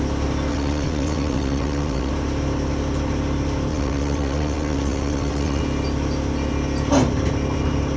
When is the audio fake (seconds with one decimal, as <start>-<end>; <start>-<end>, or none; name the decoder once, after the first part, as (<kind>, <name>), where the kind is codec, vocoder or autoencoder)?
0.5-2.1 (vocoder, WaveNeXt); 3.7-5.6